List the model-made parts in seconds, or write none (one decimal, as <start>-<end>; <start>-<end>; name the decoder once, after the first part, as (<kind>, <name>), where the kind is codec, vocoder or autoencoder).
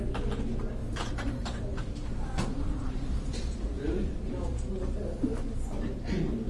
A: 0.8-4.7 (vocoder, BigVGAN v2)